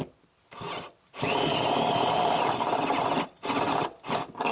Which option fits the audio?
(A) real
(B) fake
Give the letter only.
A